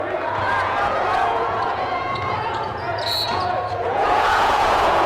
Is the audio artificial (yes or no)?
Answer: yes